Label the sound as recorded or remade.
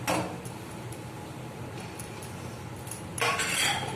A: recorded